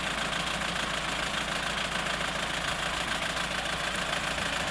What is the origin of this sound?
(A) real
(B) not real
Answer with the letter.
A